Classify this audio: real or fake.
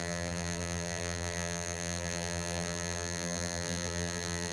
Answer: fake